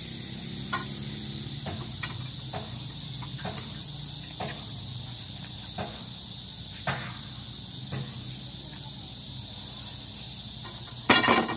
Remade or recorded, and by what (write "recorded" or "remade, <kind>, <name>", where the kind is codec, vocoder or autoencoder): recorded